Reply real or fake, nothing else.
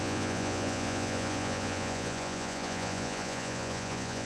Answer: fake